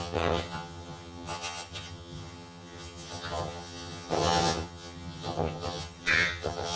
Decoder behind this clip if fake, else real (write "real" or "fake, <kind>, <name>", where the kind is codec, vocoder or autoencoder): fake, vocoder, HiFi-GAN